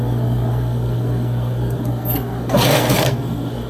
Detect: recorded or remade remade